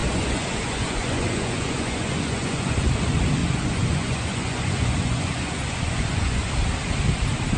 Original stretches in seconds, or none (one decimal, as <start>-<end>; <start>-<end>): 2.9-3.4; 6.5-7.6